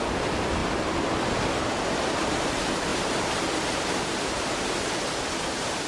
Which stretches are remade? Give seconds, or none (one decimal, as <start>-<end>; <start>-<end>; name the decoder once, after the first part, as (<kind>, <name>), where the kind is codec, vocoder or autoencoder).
2.9-4.5 (vocoder, BigVGAN v2)